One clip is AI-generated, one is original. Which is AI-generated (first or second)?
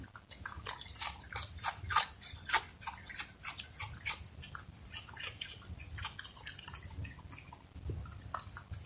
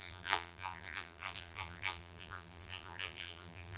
second